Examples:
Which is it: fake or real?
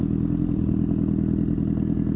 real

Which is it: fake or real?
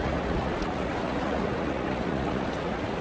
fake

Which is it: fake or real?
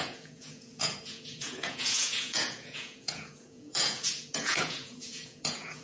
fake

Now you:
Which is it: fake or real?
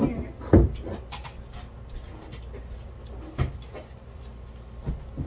real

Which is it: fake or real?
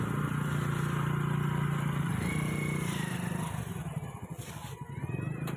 real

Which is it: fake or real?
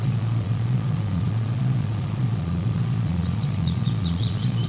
fake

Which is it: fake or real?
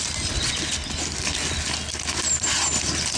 real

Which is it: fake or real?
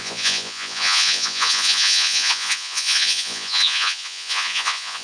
fake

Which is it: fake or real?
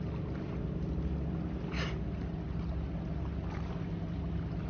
real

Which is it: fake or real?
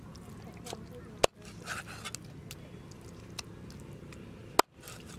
real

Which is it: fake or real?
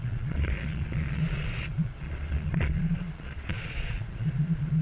fake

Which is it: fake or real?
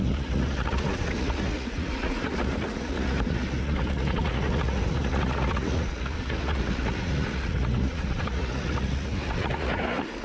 fake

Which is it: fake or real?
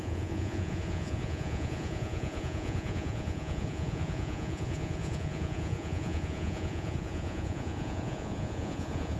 fake